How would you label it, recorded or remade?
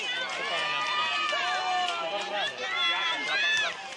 recorded